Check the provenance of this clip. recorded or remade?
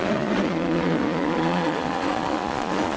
remade